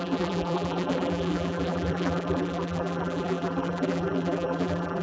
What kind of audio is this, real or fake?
fake